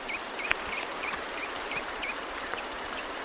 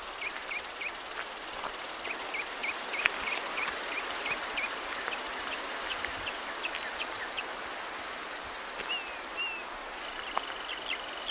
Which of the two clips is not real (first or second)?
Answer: first